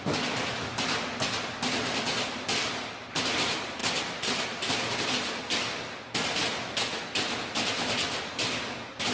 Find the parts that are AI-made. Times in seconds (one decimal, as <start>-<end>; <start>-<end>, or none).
none